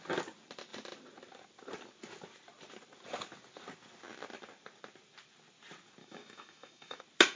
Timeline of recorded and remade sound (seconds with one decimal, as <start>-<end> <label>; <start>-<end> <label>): 0.0-6.0 recorded; 6.0-7.0 remade; 7.0-7.4 recorded